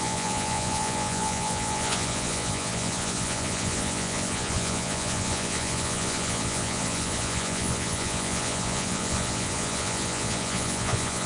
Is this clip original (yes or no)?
no